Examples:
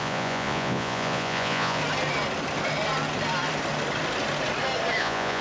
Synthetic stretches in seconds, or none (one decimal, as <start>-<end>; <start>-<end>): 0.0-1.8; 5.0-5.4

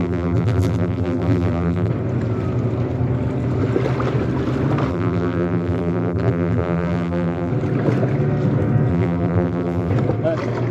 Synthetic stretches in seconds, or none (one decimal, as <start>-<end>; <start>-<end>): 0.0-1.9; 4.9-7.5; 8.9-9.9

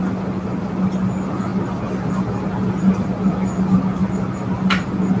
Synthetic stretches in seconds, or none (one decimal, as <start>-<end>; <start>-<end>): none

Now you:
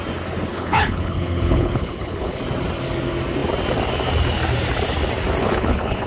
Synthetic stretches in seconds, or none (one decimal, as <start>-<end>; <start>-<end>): 0.5-2.4; 5.4-6.1